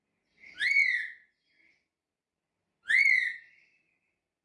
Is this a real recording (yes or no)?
no